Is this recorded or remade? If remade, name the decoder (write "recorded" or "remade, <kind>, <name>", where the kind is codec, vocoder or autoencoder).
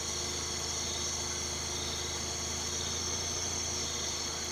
recorded